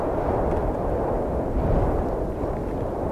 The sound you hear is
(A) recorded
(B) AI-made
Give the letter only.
A